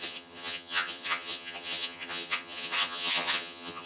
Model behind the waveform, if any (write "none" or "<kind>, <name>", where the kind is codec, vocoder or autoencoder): vocoder, HiFi-GAN